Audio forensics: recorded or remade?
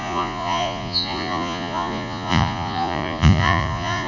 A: remade